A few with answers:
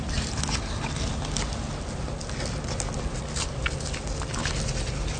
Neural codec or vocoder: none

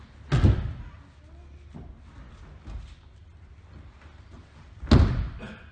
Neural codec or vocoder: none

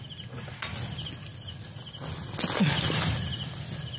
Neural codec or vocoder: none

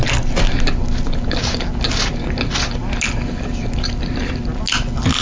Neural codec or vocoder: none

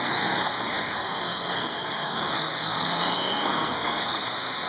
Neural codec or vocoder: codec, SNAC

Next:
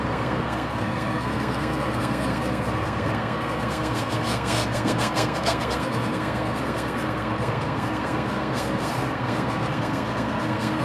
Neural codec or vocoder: codec, SNAC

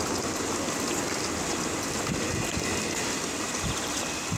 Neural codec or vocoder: none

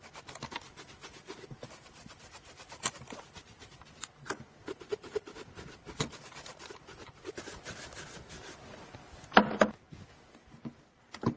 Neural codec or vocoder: none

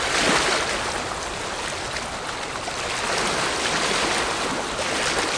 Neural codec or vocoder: none